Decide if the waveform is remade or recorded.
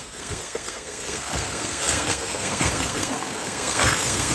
remade